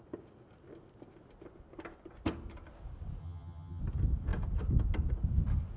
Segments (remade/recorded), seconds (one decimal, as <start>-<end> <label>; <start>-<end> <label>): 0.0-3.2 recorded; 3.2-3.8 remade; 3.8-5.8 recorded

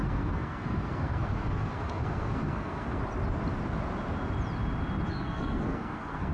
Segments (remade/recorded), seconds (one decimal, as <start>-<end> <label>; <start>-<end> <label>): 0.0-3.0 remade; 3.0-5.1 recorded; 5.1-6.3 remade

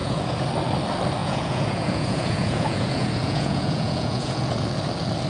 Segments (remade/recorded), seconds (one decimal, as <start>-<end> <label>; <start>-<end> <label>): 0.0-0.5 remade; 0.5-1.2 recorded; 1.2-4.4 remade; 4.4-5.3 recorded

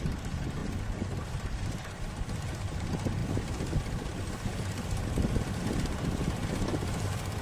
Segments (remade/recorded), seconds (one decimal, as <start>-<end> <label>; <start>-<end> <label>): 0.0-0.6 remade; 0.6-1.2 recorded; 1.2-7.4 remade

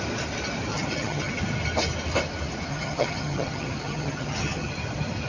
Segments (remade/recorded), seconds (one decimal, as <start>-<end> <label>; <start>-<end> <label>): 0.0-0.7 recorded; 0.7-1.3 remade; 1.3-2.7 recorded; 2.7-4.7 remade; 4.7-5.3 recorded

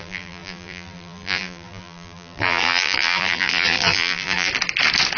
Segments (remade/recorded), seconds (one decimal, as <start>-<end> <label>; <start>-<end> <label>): 0.0-4.5 remade; 4.5-5.2 recorded

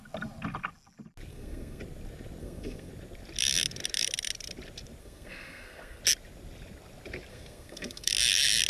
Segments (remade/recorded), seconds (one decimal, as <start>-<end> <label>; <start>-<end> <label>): 0.0-1.3 recorded; 1.3-1.8 remade; 1.8-2.4 recorded; 2.4-2.9 remade; 2.9-5.0 recorded; 5.0-6.0 remade; 6.0-7.3 recorded; 7.3-8.1 remade; 8.1-8.7 recorded

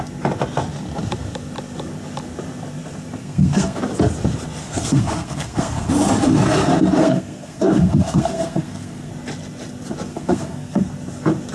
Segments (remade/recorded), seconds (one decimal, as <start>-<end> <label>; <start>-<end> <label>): 0.0-3.2 recorded; 3.2-3.8 remade; 3.8-4.6 recorded; 4.6-5.9 remade; 5.9-7.0 recorded; 7.0-9.1 remade; 9.1-10.1 recorded; 10.1-10.9 remade; 10.9-11.5 recorded